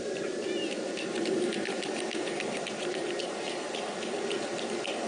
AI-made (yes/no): no